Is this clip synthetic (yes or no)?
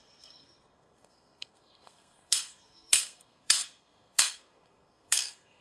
yes